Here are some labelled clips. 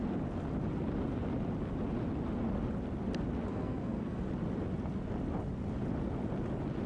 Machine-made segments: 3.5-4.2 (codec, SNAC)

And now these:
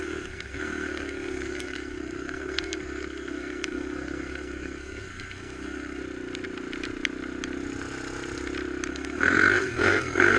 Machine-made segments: 0.0-6.0 (codec, SNAC); 8.9-10.4

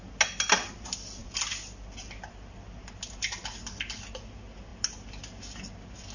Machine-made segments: none

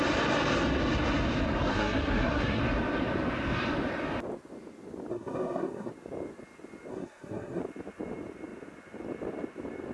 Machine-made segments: 1.7-2.6 (codec, SNAC); 5.1-5.9; 6.9-7.6

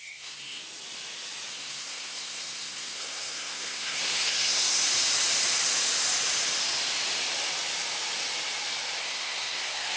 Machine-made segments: 0.0-0.6 (codec, SNAC); 1.5-4.8; 9.0-10.0

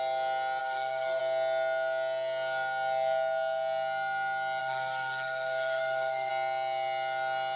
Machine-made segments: 0.6-1.2 (codec, SNAC); 4.6-6.3

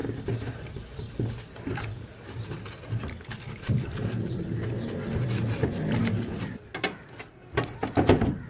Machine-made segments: none

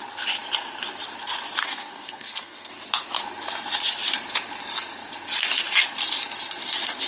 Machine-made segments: 1.6-2.7 (codec, SNAC)